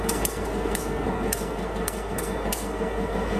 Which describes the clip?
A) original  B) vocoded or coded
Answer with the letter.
B